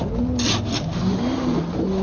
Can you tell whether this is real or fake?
real